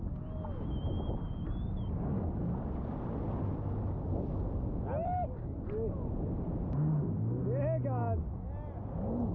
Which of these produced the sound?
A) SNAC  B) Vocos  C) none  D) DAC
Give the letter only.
C